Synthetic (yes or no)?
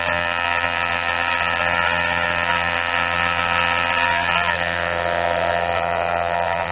yes